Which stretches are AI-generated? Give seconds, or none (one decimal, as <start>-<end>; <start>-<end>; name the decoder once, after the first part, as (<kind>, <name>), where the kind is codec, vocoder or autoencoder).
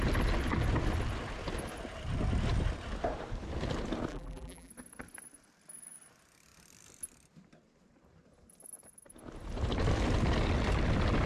4.1-4.7 (vocoder, BigVGAN v2)